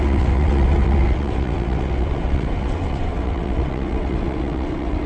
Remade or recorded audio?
remade